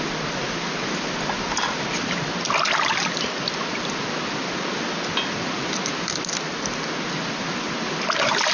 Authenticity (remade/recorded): recorded